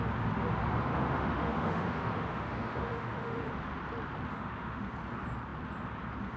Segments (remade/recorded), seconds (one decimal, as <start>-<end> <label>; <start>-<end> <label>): 0.0-0.9 recorded; 0.9-3.5 remade; 3.5-4.3 recorded; 4.3-4.8 remade; 4.8-6.4 recorded

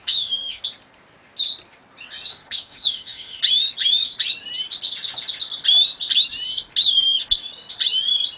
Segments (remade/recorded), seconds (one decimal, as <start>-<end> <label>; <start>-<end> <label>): 0.0-0.6 remade; 0.6-2.3 recorded; 2.3-3.4 remade; 3.4-8.4 recorded

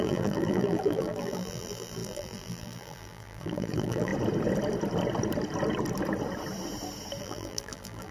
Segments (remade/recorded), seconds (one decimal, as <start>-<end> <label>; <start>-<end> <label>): 0.0-4.1 remade; 4.1-7.2 recorded; 7.2-8.1 remade

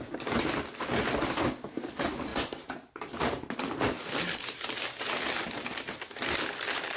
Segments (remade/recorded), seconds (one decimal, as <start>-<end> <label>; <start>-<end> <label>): 0.0-7.0 remade

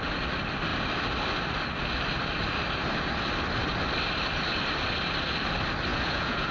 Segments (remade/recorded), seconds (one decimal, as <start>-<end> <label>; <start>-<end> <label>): 0.0-5.9 recorded; 5.9-6.5 remade

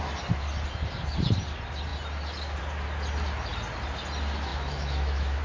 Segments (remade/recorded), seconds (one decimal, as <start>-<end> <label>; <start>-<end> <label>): 0.0-4.5 recorded; 4.5-5.4 remade

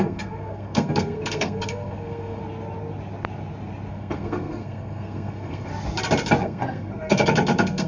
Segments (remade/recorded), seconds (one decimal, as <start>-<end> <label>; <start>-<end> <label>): 0.0-2.4 remade; 2.4-3.9 recorded; 3.9-5.7 remade; 5.7-6.4 recorded; 6.4-7.9 remade

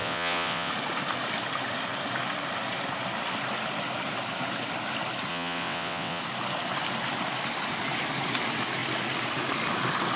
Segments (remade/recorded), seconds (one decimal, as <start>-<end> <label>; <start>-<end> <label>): 0.0-0.7 remade; 0.7-5.3 recorded; 5.3-6.2 remade; 6.2-10.2 recorded